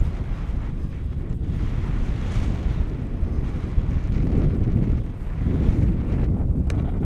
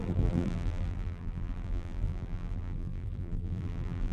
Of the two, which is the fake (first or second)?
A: second